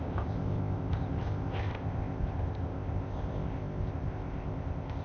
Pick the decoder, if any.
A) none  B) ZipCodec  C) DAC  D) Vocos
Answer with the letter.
B